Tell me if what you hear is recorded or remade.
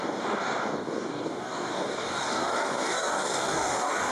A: remade